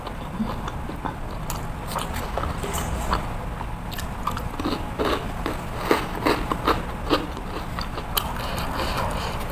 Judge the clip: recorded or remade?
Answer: recorded